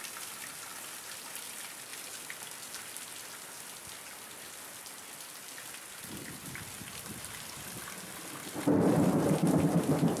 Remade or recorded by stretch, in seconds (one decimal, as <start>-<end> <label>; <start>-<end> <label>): 0.0-10.2 recorded